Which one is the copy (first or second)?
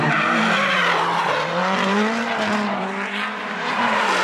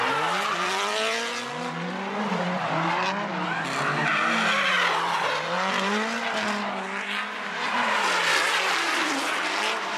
first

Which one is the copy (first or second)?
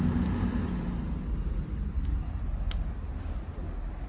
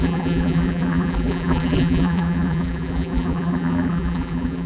second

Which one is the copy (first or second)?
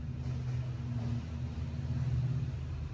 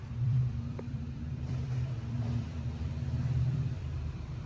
second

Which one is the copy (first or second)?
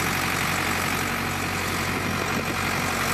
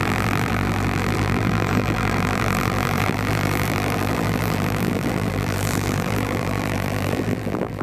second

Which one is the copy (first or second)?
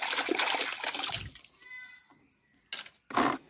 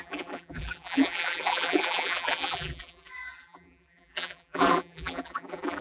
second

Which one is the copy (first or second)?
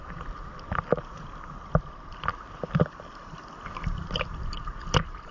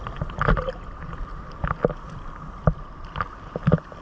first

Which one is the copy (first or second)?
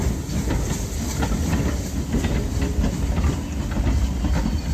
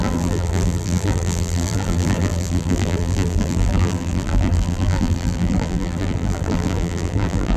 second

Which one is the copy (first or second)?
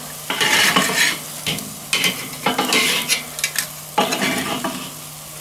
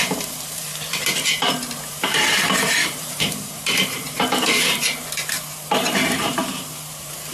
second